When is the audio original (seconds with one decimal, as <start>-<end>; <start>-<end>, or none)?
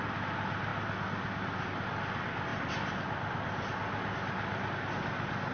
0.0-5.5